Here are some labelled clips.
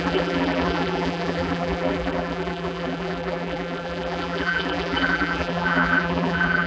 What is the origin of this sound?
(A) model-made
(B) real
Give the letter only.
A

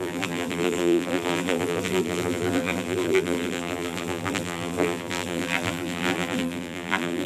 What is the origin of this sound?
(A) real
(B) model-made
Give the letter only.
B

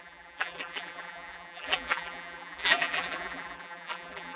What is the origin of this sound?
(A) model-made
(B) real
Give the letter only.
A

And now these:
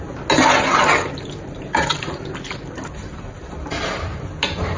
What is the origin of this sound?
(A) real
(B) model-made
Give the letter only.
A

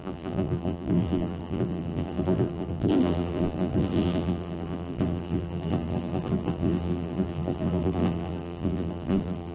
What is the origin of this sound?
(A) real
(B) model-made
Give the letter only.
B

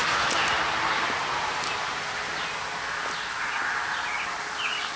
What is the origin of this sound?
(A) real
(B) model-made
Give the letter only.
A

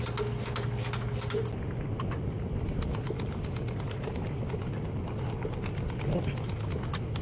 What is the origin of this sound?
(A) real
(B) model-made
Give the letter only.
A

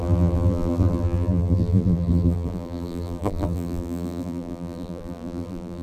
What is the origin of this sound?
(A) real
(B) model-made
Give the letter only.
B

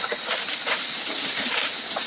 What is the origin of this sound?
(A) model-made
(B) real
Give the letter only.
B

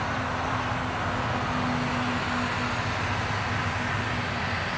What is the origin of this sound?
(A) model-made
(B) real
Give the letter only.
B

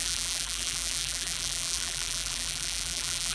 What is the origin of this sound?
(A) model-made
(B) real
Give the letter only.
A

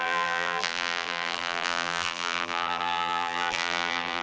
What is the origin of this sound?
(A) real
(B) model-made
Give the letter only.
B